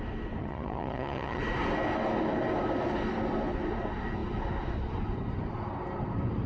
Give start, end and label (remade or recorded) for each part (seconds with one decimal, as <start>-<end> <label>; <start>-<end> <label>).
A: 0.0-0.4 recorded; 0.4-1.4 remade; 1.4-6.5 recorded